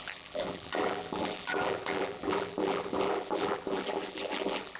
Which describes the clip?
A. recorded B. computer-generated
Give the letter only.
B